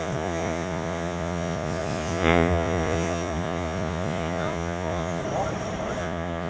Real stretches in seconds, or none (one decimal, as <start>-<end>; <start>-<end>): 5.2-6.0